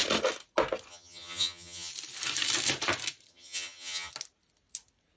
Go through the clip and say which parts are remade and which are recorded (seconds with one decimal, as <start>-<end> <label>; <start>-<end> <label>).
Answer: 0.0-0.9 recorded; 0.9-1.9 remade; 1.9-3.3 recorded; 3.3-4.1 remade; 4.1-5.2 recorded